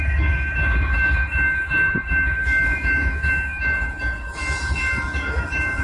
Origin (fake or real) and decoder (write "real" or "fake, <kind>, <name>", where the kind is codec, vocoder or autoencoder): fake, autoencoder, DAC-VAE